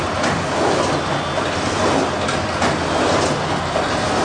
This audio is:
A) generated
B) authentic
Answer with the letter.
B